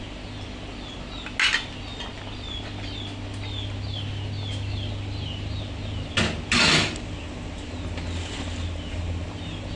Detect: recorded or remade recorded